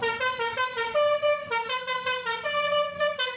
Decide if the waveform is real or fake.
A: real